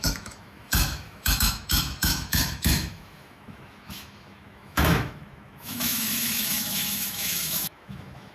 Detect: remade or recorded remade